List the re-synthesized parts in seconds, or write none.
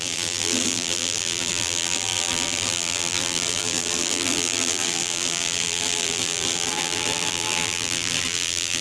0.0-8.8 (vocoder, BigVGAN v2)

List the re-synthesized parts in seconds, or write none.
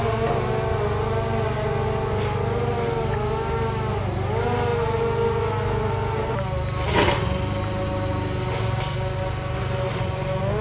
none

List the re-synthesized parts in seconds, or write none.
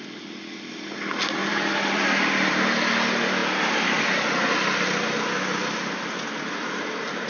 1.4-2.5 (vocoder, BigVGAN v2)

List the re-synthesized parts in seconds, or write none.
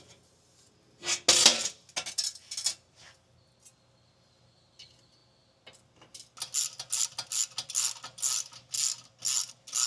none